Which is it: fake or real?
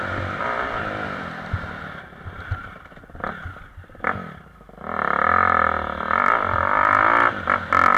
real